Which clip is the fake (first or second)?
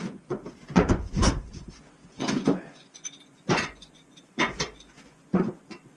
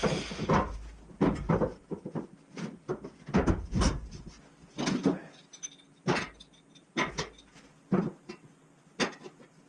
first